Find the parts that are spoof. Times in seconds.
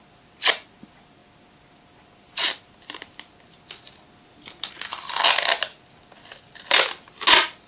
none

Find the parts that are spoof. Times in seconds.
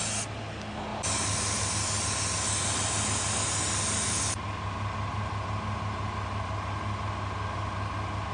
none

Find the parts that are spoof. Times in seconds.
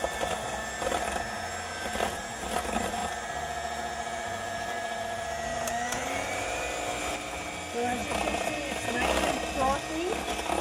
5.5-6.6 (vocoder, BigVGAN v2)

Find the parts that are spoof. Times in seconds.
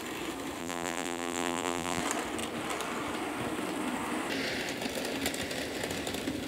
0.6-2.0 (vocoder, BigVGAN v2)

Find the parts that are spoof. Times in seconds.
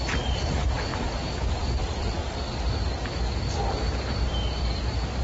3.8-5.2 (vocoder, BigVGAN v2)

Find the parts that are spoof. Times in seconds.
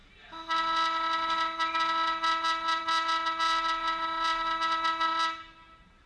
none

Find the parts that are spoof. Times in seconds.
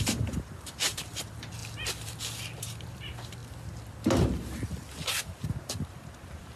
0.0-1.6 (vocoder, BigVGAN v2); 2.6-3.4; 5.5-6.6